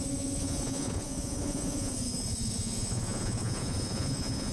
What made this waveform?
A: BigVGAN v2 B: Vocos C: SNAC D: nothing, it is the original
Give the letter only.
B